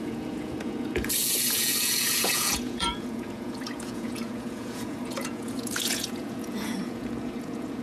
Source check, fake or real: fake